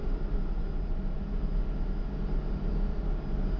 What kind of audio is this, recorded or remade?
recorded